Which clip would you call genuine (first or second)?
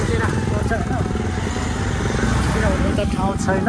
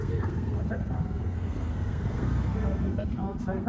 first